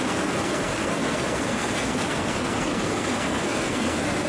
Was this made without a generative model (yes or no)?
no